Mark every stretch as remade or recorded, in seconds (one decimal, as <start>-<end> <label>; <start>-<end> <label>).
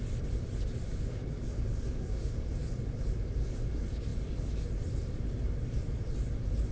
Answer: 0.0-0.9 recorded; 0.9-2.5 remade; 2.5-6.7 recorded